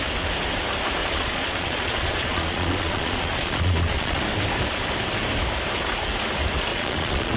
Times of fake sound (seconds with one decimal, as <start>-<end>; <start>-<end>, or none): 1.0-4.2; 6.7-7.4